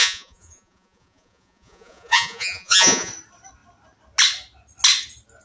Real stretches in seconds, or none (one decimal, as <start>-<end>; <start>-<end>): 3.1-5.4